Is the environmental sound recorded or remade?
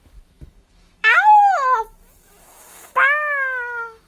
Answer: remade